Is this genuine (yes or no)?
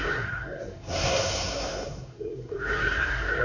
no